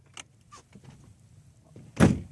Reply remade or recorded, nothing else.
recorded